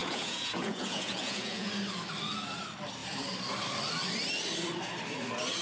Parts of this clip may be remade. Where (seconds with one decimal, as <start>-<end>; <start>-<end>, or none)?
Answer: 0.0-1.7